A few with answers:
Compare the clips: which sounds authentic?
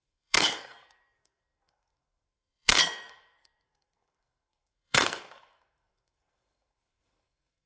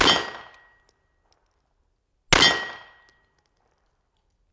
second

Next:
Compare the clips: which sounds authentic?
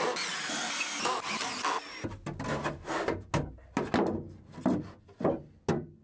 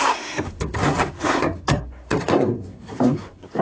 first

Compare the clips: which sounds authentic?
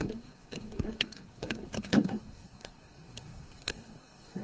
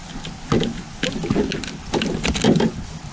second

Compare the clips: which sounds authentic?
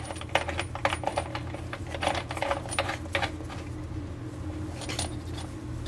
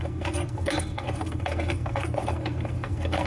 first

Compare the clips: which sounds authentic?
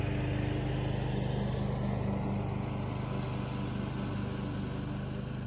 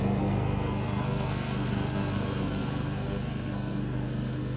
first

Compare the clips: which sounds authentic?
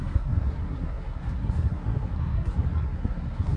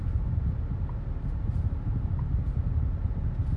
second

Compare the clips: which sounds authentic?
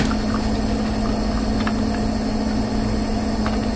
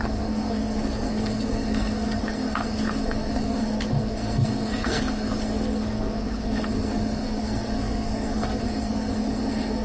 first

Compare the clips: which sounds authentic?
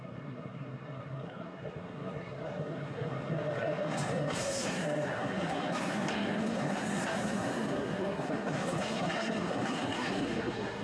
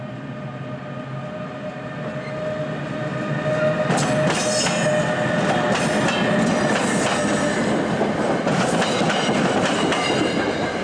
second